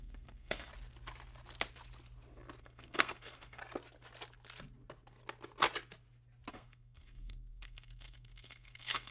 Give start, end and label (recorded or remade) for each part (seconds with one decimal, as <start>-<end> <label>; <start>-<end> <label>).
0.0-0.7 remade; 0.7-2.6 recorded; 2.6-3.6 remade; 3.6-6.5 recorded; 6.5-9.1 remade